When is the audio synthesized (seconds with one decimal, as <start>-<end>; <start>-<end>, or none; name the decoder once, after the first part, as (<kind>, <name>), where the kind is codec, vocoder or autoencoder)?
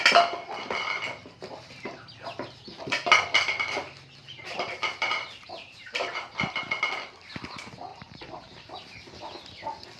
4.2-6.7 (vocoder, BigVGAN v2); 7.9-8.9